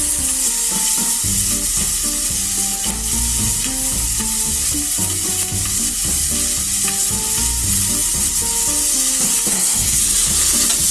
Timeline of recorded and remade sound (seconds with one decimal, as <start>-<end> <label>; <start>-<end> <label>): 0.0-9.5 recorded; 9.5-10.0 remade; 10.0-10.9 recorded